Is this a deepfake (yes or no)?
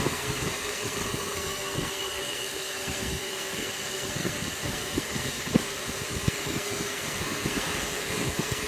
yes